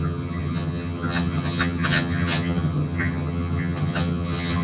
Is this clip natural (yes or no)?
no